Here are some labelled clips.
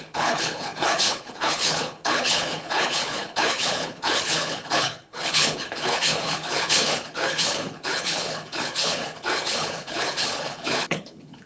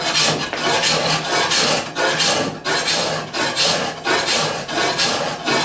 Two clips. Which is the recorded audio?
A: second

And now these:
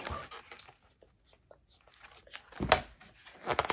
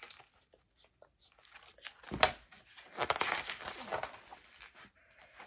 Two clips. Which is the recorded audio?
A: first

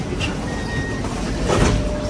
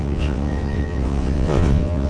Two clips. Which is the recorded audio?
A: first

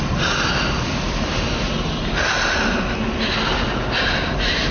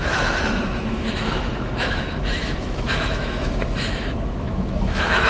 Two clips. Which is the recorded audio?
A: first